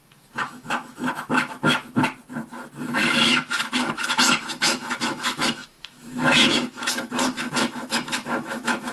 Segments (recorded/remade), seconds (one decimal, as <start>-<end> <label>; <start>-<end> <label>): 0.0-2.0 remade; 2.0-2.8 recorded; 2.8-8.9 remade